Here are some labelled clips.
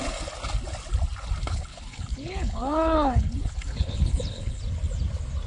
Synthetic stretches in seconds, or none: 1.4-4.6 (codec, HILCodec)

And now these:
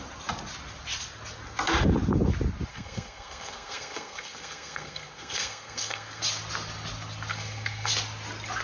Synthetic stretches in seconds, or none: 2.7-6.2 (codec, SNAC); 7.3-7.9